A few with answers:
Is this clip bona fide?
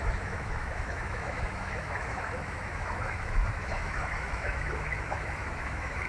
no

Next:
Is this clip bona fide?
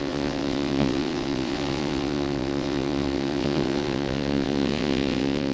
no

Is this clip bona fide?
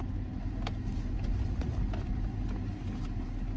yes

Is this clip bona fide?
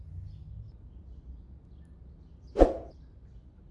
yes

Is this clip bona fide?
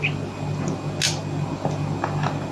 yes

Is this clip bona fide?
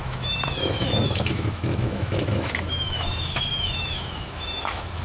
no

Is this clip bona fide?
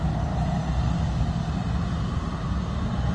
yes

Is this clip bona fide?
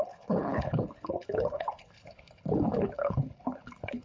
no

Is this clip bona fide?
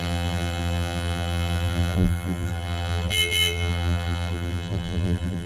no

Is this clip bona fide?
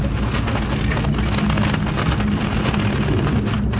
yes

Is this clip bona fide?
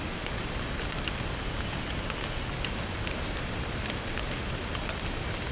yes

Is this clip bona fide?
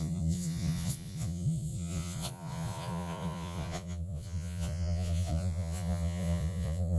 no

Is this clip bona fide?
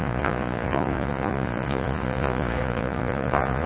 no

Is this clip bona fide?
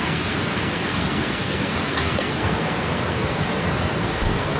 no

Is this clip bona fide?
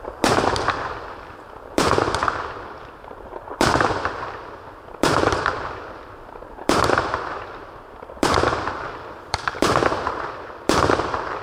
no